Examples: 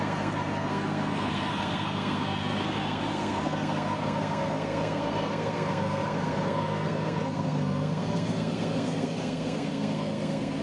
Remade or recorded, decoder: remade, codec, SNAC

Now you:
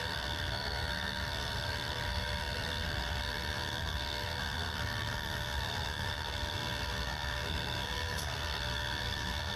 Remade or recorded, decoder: remade, codec, SNAC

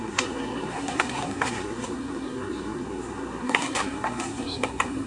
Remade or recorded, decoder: remade, codec, SNAC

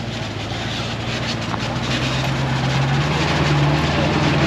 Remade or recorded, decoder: recorded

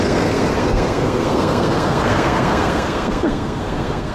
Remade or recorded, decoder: remade, codec, SNAC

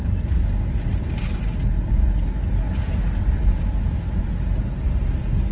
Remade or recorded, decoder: recorded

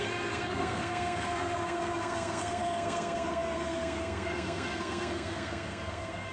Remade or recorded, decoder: remade, codec, SNAC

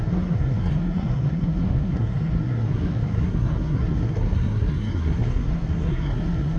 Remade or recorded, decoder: remade, codec, SNAC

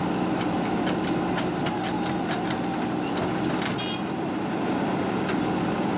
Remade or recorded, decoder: recorded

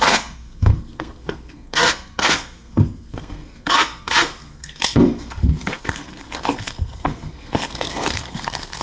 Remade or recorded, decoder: remade, codec, SNAC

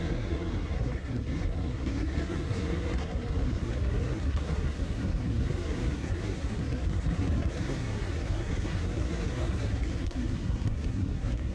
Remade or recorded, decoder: remade, codec, SNAC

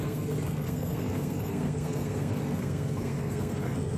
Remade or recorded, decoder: remade, codec, SNAC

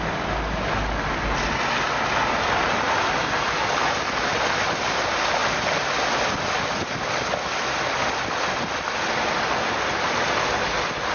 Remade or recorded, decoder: recorded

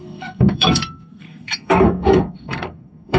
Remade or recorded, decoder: remade, codec, SNAC